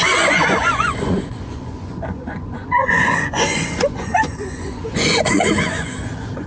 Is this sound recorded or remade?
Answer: remade